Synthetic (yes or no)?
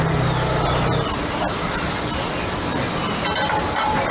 no